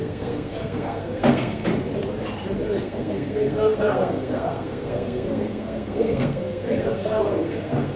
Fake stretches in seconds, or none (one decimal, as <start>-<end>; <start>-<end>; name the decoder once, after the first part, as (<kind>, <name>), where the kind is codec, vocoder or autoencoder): 0.0-1.6 (codec, SNAC); 2.8-8.0